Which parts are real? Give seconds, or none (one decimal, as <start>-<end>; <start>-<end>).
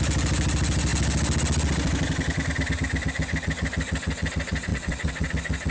0.0-4.7; 5.3-5.7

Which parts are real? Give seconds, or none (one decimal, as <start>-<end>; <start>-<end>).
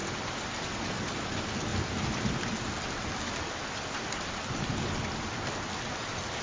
0.0-6.4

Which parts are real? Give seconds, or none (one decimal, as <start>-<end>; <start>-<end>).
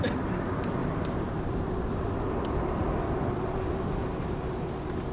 0.0-5.1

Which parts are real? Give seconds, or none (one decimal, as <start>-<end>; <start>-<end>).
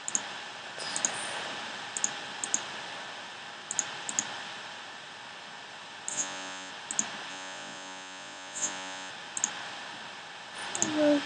0.0-6.1; 6.7-7.3; 9.1-11.3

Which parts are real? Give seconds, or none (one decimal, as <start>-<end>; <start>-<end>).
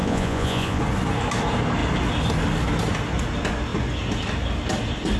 0.8-5.2